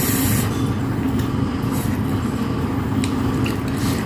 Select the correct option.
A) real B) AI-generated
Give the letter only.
A